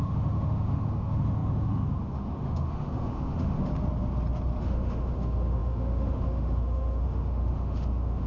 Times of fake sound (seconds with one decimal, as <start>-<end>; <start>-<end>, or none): 0.0-3.7; 4.6-8.3